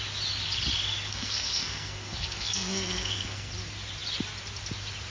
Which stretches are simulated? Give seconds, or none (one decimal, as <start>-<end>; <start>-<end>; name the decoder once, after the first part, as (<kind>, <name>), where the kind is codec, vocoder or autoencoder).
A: 1.1-3.5 (codec, SNAC)